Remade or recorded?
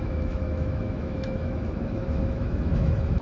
remade